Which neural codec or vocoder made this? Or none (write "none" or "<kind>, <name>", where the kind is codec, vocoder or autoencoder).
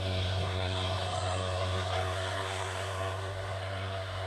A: codec, SNAC